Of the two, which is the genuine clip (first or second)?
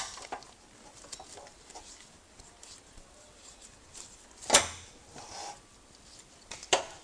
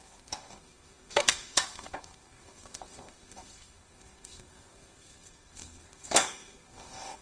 first